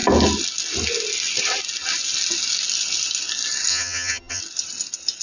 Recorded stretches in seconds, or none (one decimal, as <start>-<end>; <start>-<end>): 0.0-3.7; 4.4-5.2